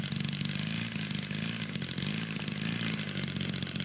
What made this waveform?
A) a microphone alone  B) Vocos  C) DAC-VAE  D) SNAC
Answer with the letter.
A